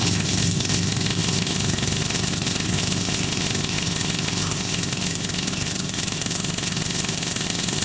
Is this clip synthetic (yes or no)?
yes